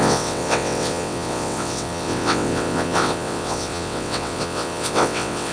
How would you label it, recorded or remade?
remade